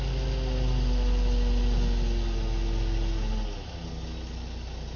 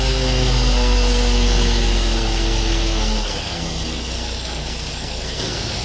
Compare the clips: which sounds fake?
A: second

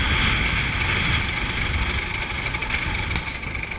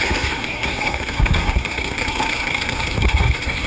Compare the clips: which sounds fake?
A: second